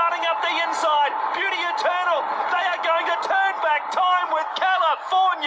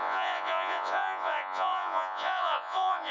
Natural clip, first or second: first